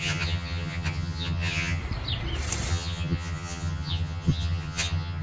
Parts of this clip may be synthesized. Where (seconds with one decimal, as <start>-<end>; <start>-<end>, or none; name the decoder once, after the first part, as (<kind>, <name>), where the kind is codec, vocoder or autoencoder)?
0.0-1.8 (vocoder, HiFi-GAN); 2.7-5.2

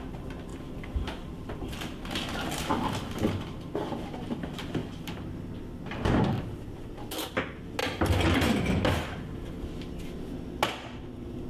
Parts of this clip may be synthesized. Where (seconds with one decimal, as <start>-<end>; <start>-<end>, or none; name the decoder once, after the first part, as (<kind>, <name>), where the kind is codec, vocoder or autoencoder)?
0.5-2.1 (vocoder, BigVGAN v2); 4.8-5.3; 7.8-9.5

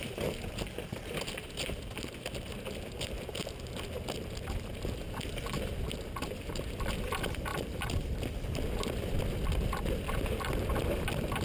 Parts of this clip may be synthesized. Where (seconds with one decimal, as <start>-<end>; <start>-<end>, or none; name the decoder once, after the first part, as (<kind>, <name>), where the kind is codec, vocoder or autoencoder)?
7.5-10.6 (vocoder, BigVGAN v2)